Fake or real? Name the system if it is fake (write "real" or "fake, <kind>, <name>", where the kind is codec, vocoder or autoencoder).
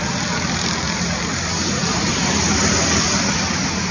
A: real